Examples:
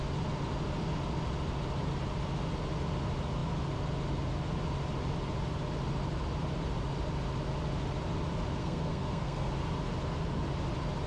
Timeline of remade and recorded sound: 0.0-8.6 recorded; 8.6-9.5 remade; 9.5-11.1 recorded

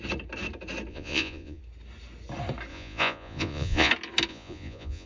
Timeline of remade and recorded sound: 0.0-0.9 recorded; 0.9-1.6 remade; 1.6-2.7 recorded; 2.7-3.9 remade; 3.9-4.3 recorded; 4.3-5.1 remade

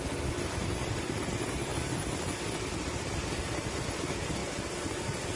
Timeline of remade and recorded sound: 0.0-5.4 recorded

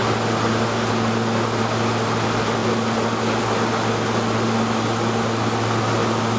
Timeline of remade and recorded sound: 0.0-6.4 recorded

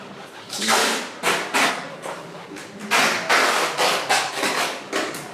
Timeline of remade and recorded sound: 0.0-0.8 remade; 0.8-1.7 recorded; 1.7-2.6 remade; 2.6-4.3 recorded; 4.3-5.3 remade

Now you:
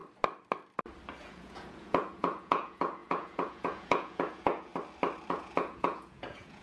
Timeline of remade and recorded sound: 0.0-1.2 recorded; 1.2-4.7 remade; 4.7-5.3 recorded; 5.3-6.6 remade